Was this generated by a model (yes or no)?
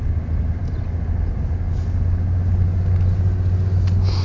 no